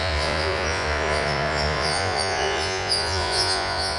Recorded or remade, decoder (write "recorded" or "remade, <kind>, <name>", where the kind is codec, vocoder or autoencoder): remade, vocoder, Vocos